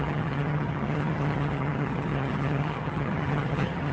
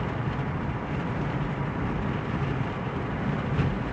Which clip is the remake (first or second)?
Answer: first